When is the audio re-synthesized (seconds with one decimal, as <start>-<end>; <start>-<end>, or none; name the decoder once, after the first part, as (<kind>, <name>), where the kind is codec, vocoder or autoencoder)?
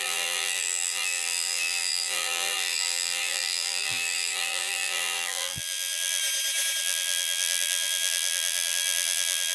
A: 0.0-6.2 (vocoder, BigVGAN v2); 6.8-9.5